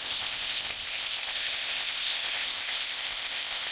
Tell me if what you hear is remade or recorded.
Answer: remade